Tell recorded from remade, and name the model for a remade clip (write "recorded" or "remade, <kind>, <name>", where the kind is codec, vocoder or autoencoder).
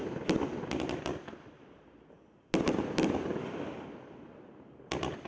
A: recorded